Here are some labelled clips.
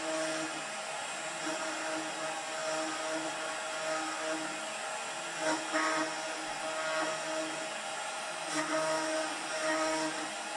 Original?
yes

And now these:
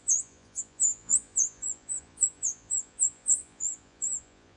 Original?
no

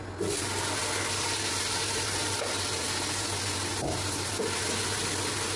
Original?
yes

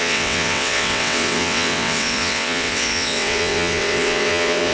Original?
no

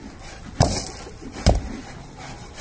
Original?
no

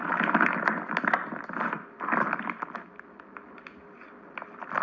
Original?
yes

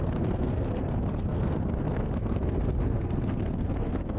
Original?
no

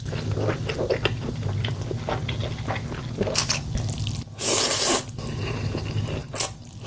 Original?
yes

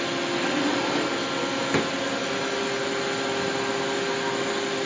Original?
yes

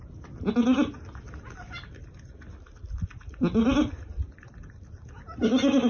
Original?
yes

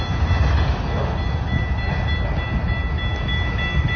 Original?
yes